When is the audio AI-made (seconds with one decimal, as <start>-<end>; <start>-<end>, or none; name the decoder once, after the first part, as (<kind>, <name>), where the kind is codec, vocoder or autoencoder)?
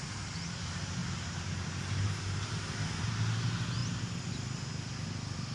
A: 1.0-2.5 (vocoder, BigVGAN v2)